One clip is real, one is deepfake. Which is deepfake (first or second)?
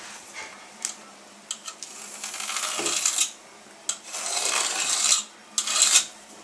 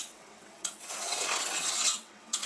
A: second